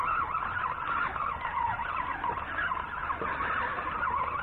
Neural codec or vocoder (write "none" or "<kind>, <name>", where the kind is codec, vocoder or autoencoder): none